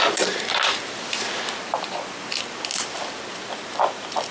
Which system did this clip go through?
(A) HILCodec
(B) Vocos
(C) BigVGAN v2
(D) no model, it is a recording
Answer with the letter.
D